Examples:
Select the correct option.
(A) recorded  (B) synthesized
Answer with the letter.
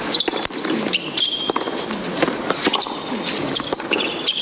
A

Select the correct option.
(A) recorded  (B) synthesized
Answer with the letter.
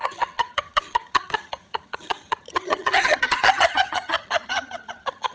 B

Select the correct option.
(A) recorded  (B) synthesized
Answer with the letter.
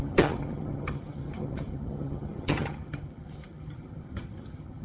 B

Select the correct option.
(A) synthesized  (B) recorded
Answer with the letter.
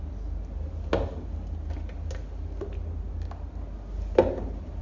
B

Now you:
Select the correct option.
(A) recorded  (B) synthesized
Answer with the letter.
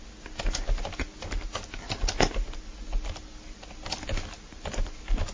A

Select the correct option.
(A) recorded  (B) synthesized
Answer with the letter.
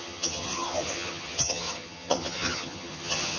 B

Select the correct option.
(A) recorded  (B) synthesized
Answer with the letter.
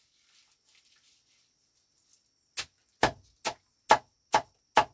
A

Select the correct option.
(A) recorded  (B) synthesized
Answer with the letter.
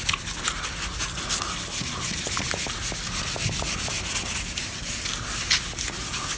A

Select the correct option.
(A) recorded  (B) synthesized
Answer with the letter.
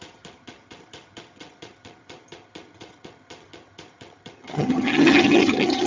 B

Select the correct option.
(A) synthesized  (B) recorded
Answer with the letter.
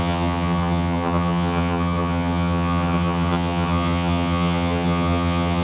A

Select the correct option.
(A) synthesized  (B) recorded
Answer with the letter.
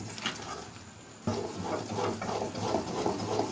B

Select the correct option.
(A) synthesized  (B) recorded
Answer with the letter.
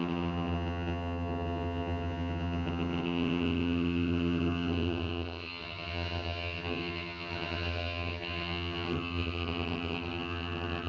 A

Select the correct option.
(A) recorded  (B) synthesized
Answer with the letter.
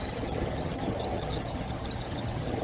B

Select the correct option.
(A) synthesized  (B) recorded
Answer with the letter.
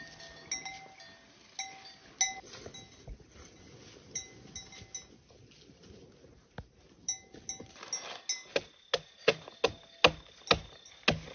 B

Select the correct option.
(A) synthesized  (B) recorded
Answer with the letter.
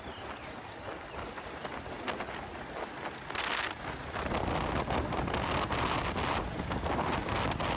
B